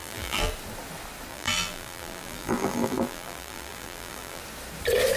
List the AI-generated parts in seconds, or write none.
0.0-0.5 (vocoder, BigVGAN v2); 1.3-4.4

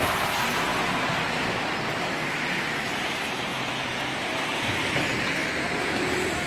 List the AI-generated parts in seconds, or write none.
0.0-0.7 (vocoder, BigVGAN v2); 2.3-3.5; 4.5-6.5

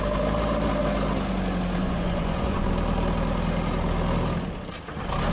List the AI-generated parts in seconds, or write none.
1.8-2.7 (vocoder, Vocos)

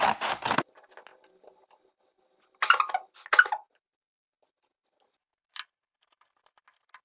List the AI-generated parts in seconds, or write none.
none